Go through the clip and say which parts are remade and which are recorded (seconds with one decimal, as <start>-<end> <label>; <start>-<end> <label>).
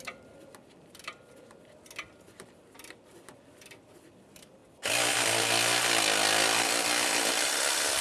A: 0.0-8.0 recorded